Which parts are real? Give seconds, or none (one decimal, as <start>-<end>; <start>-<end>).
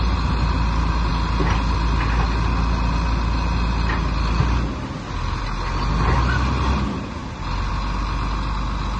0.0-9.0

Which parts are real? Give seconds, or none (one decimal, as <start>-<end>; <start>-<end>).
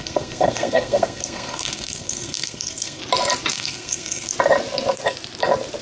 3.0-3.5; 4.3-5.8